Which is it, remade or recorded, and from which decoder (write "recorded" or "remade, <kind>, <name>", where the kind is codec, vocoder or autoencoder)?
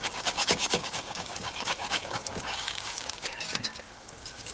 remade, codec, DAC